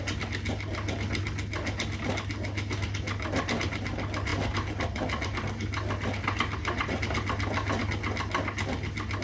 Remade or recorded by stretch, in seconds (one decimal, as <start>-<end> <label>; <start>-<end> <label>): 0.0-9.2 recorded